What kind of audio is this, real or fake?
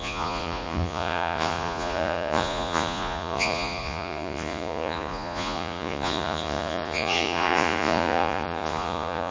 fake